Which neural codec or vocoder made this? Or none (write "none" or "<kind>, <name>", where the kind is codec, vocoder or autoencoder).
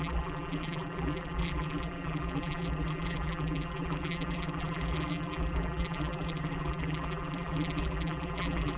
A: vocoder, BigVGAN v2